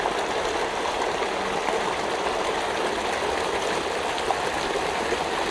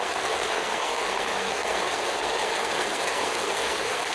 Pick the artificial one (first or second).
second